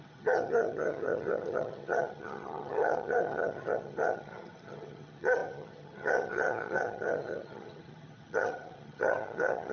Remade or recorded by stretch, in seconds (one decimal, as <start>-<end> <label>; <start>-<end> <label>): 0.0-9.7 remade